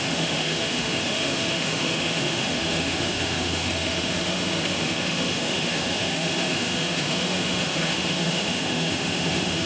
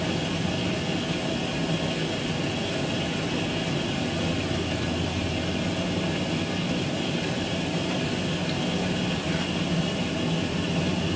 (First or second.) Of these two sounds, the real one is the second